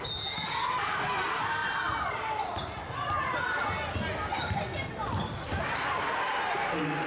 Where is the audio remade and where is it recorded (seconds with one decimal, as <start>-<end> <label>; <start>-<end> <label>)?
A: 0.0-7.1 recorded